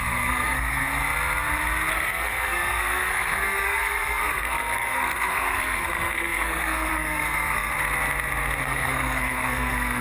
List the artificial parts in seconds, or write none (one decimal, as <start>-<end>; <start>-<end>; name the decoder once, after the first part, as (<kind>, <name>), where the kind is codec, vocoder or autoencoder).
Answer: 0.0-1.0 (codec, SNAC); 1.9-7.7; 8.6-10.0